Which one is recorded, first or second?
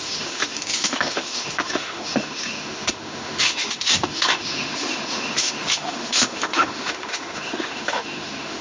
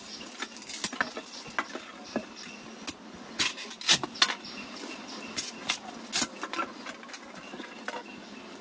second